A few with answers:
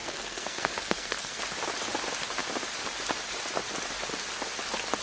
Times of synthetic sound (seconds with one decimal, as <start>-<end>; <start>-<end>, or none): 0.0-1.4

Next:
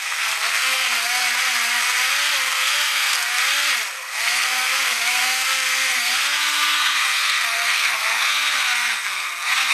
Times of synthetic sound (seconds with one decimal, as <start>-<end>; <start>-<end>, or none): 0.0-1.2; 2.4-3.4; 3.9-9.7

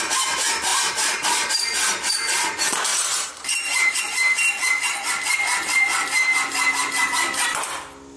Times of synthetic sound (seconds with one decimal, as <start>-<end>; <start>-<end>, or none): 0.7-1.5; 2.9-4.0

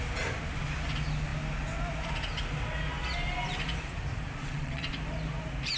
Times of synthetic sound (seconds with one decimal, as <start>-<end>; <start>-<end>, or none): 4.4-4.9

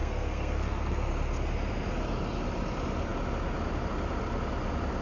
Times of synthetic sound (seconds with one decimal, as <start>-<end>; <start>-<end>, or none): 0.0-1.1

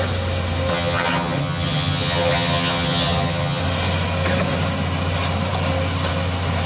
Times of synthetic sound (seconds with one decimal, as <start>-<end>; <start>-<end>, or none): 0.7-3.6